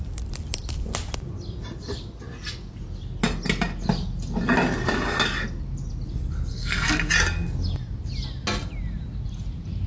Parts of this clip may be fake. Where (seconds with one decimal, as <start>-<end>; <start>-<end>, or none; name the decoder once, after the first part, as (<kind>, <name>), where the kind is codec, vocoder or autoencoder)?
6.5-7.1 (codec, SNAC)